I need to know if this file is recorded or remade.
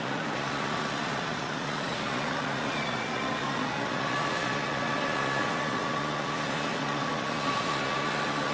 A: remade